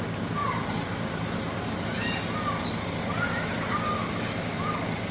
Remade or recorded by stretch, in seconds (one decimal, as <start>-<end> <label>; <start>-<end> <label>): 0.0-5.1 recorded